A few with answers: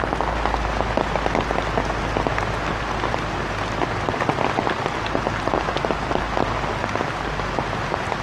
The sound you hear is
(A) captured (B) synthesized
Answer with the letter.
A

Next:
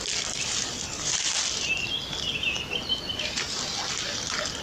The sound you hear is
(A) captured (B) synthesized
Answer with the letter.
A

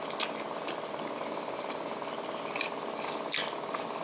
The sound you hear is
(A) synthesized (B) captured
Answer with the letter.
B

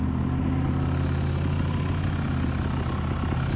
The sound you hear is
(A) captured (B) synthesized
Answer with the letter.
A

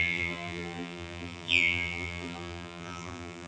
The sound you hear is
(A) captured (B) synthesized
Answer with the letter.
B